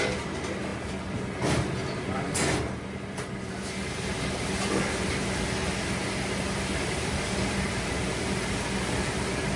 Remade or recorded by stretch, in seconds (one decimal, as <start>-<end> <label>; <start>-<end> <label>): 0.0-9.6 recorded